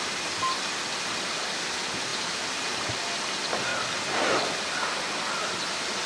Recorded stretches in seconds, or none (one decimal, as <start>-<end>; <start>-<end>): 0.0-6.1

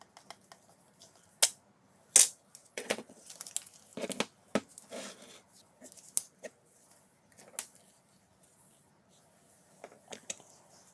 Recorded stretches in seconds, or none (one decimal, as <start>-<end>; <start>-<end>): 0.0-2.6; 3.3-10.9